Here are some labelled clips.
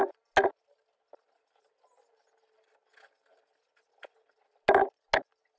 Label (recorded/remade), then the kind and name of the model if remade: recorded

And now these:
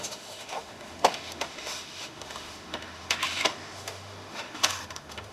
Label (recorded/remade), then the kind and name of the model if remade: remade, autoencoder, DAC-VAE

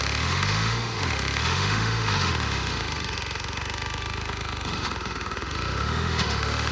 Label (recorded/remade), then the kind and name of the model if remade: remade, autoencoder, DAC-VAE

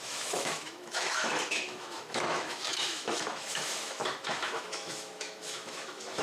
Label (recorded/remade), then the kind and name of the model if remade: remade, autoencoder, DAC-VAE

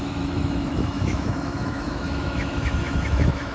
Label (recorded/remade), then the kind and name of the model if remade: remade, autoencoder, DAC-VAE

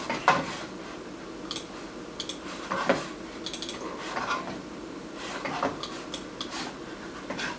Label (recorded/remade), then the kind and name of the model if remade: recorded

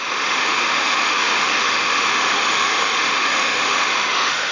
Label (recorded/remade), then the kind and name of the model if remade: remade, autoencoder, DAC-VAE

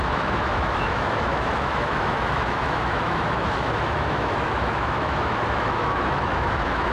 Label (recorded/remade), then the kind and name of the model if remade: remade, autoencoder, DAC-VAE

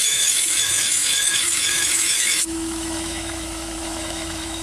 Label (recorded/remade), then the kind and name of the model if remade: remade, autoencoder, DAC-VAE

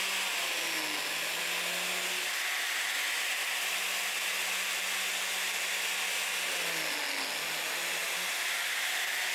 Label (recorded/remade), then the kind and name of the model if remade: recorded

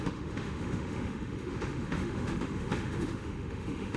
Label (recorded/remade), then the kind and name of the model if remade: remade, autoencoder, DAC-VAE